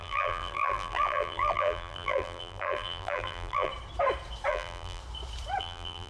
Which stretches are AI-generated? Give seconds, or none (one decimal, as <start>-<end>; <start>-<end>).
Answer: 0.0-3.7; 4.5-5.0; 5.6-6.1